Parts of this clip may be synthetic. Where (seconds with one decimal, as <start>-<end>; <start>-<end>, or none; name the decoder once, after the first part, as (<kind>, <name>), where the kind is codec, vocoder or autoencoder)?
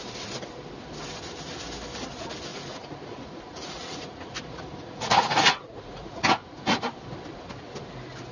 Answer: 2.5-6.8 (vocoder, Vocos)